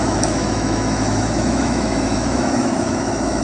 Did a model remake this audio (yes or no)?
yes